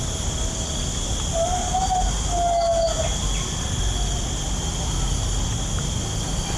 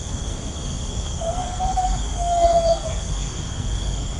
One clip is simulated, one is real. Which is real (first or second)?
first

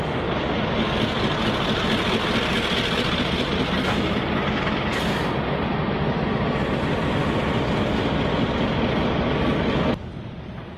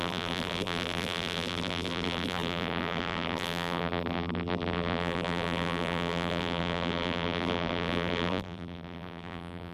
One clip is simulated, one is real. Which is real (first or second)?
first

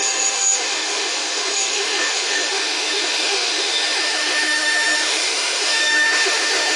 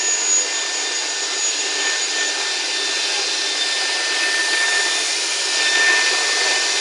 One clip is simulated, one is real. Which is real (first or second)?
second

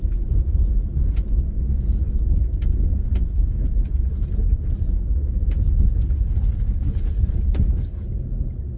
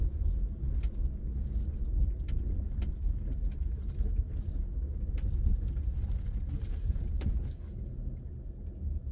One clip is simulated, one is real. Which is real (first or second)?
second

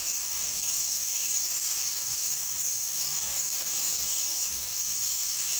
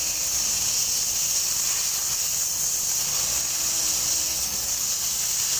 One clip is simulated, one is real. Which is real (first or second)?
second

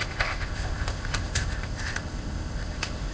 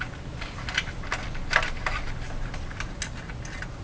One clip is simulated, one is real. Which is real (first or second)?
second